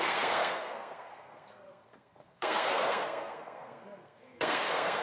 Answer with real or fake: fake